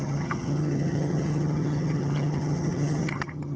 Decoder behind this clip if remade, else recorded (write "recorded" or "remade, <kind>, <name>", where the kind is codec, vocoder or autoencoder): remade, vocoder, HiFi-GAN